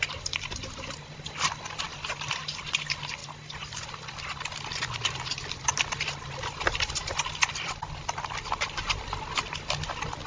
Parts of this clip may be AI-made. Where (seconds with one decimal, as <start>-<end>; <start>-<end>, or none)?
none